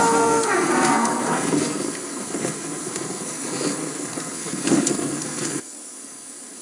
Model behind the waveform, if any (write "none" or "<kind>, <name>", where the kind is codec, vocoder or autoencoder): codec, SNAC